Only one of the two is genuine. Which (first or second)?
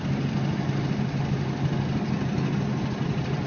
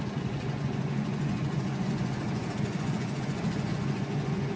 first